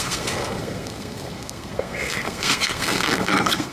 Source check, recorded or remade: remade